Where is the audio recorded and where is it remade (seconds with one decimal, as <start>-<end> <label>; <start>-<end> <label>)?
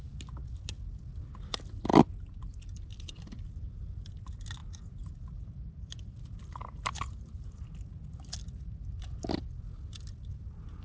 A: 0.0-10.8 recorded